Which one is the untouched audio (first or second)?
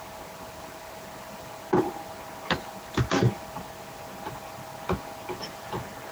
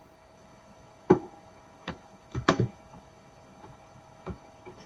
first